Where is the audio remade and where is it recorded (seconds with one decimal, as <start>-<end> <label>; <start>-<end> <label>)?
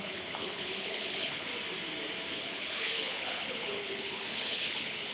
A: 0.0-1.5 remade; 1.5-2.3 recorded; 2.3-5.1 remade